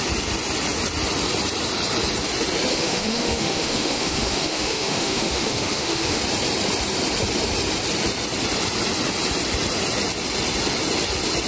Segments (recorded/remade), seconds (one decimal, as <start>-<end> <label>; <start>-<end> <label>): 0.0-2.7 recorded; 2.7-6.2 remade; 6.2-11.5 recorded